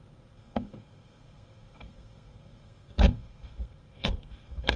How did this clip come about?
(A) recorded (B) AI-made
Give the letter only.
B